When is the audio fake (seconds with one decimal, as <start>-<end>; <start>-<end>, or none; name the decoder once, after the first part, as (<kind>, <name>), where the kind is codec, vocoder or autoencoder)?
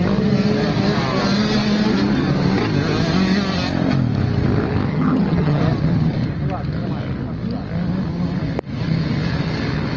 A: 4.9-5.6 (vocoder, HiFi-GAN)